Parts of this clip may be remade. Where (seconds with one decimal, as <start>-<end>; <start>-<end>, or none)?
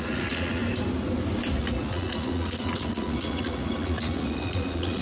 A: 0.0-0.6; 1.5-5.0